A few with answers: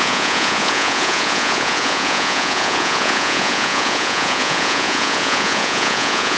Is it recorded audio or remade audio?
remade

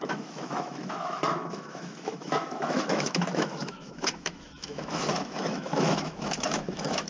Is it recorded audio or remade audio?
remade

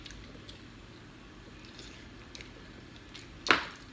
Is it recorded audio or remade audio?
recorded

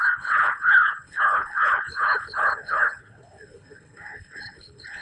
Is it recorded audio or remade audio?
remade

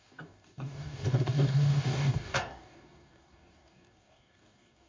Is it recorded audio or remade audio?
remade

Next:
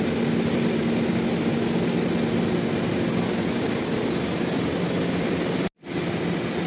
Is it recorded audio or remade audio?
recorded